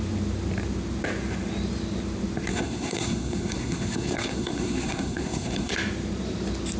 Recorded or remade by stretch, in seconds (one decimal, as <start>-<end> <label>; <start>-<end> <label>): 0.0-2.5 recorded; 2.5-5.7 remade; 5.7-6.8 recorded